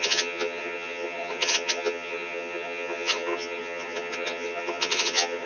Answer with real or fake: fake